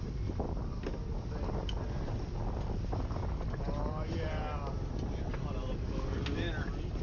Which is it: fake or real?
real